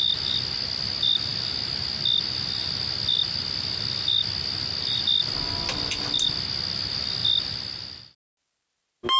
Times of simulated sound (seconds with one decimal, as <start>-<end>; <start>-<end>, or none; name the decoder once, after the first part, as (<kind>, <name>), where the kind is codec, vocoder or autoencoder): none